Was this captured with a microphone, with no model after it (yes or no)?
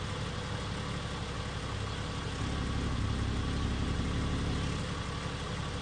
yes